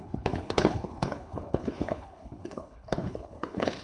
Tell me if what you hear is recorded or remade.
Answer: remade